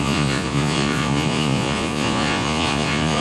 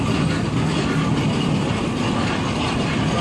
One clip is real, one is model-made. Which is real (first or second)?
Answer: second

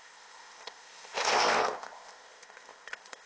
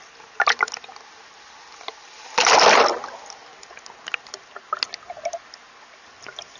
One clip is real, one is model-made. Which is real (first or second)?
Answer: second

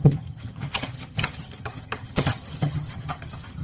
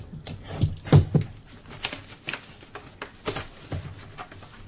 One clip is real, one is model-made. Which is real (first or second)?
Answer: second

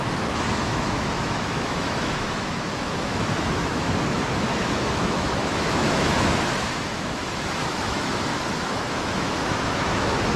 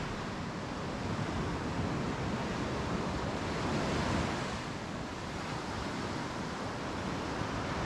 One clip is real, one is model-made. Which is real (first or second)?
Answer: second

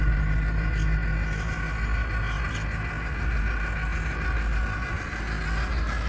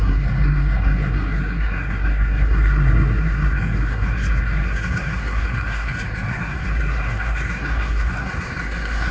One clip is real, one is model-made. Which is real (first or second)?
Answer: first